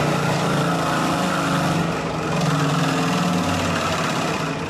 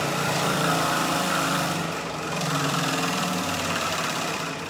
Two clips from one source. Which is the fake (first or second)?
second